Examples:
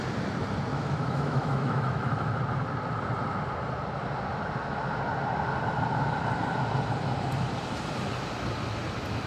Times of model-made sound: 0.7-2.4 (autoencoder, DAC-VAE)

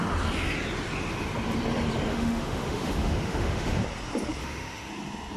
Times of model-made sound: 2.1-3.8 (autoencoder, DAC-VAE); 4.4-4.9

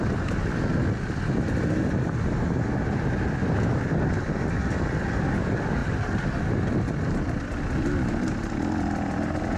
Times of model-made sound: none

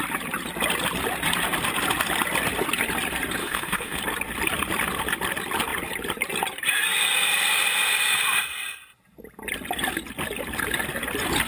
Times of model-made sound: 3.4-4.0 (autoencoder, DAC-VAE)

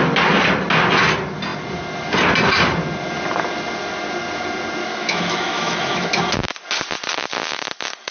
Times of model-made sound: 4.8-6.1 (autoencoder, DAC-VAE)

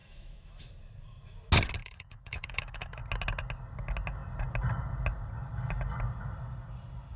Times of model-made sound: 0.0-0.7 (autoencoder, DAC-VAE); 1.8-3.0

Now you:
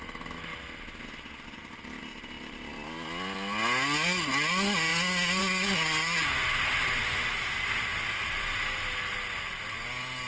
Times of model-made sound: none

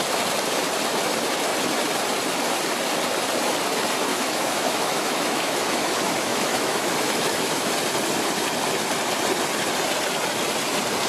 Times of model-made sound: 4.1-7.7 (autoencoder, DAC-VAE)